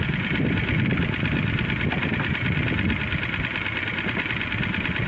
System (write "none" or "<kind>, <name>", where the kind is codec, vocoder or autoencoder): none